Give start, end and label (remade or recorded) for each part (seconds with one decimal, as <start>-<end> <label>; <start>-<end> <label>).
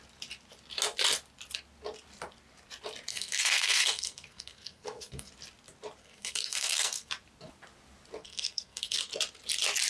0.0-3.1 recorded; 3.1-5.3 remade; 5.3-6.0 recorded; 6.0-7.1 remade; 7.1-8.2 recorded; 8.2-9.2 remade; 9.2-9.9 recorded